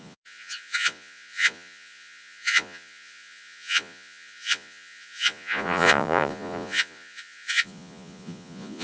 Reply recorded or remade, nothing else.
remade